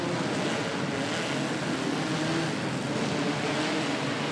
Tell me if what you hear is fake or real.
real